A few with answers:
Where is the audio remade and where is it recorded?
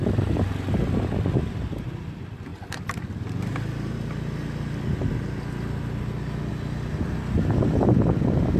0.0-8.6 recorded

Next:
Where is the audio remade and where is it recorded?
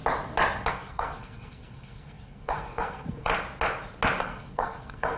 0.0-0.7 recorded; 0.7-3.3 remade; 3.3-4.2 recorded; 4.2-5.2 remade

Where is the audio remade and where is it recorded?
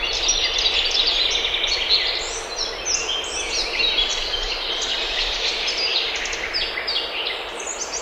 0.0-8.0 recorded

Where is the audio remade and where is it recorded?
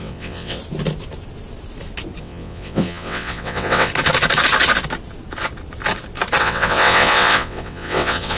0.0-0.6 remade; 0.6-2.2 recorded; 2.2-3.9 remade; 3.9-6.4 recorded; 6.4-8.4 remade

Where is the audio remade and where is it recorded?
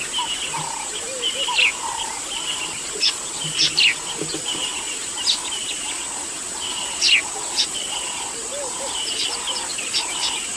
0.0-10.6 recorded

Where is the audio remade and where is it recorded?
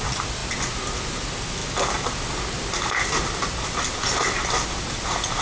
0.0-5.4 recorded